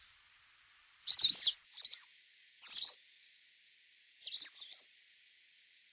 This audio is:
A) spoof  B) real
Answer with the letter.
B